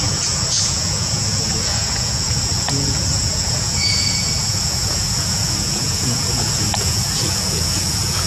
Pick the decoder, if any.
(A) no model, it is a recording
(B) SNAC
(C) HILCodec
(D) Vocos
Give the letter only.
D